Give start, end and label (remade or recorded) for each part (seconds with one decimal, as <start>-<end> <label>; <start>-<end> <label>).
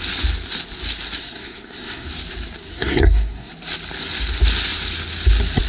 0.0-1.2 recorded; 1.2-2.1 remade; 2.1-2.7 recorded; 2.7-3.5 remade; 3.5-5.7 recorded